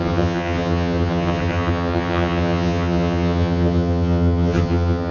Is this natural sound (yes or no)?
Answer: no